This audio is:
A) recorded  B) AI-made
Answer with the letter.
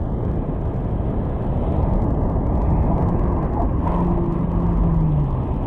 A